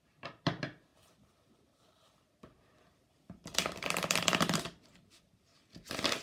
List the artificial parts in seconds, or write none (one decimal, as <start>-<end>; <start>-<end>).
none